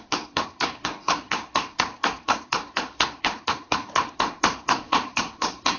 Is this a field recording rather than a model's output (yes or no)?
no